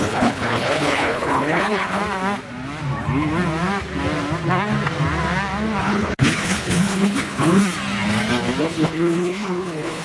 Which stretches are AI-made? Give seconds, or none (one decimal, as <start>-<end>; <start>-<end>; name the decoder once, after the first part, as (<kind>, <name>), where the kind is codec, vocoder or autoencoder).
0.0-2.0 (codec, HILCodec); 5.8-7.6; 8.6-10.0